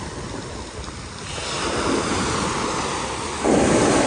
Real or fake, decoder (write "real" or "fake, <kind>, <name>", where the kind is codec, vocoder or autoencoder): real